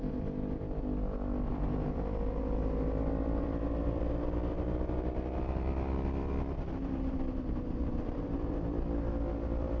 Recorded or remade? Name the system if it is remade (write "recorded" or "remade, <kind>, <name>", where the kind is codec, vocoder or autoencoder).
remade, vocoder, BigVGAN v2